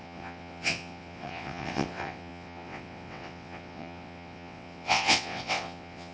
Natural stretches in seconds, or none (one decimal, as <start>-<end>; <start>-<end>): none